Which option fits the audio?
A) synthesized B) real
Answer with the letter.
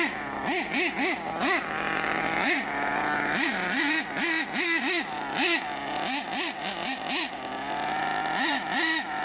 B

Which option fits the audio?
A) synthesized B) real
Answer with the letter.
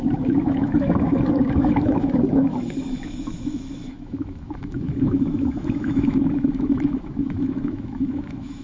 A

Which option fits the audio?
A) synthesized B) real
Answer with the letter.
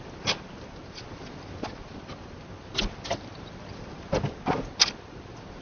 B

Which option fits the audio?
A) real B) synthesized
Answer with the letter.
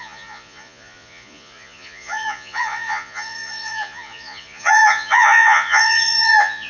B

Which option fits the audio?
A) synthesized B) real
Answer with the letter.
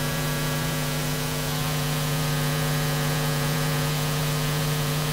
A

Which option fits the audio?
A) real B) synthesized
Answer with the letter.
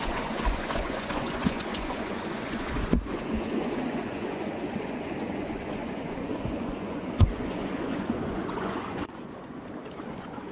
B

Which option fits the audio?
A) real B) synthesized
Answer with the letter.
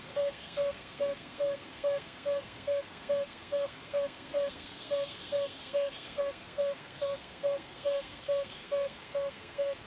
B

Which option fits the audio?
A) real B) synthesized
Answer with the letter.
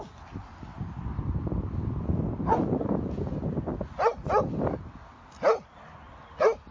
A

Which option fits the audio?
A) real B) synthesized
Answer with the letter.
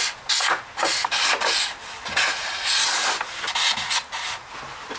A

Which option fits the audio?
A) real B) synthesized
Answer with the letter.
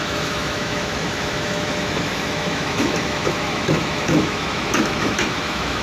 B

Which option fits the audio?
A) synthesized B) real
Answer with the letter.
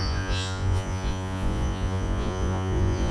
A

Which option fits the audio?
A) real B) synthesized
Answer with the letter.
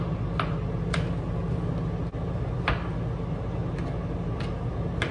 A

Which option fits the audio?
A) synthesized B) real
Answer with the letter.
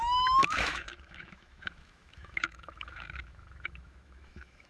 A